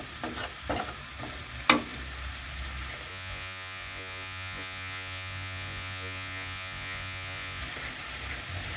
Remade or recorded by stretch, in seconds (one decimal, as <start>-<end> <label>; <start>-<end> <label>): 0.0-3.1 recorded; 3.1-7.6 remade; 7.6-8.8 recorded